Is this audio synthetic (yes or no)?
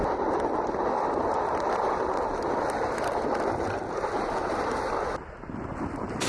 no